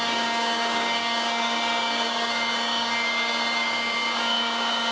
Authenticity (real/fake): fake